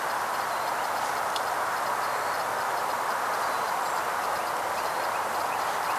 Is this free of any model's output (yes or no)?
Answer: no